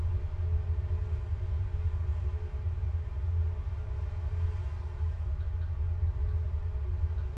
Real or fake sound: real